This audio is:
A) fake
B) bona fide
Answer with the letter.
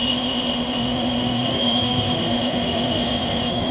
A